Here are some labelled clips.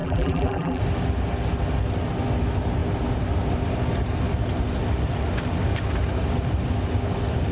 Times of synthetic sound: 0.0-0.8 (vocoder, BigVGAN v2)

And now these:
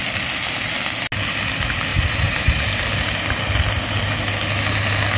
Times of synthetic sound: 1.9-2.8 (vocoder, BigVGAN v2)

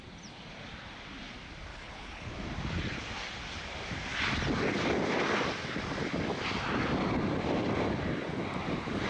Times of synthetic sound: 1.7-2.3 (codec, HILCodec)

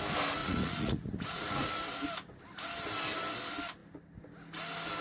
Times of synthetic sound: 0.4-1.7 (vocoder, Vocos)